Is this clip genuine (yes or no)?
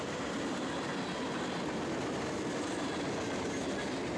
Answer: yes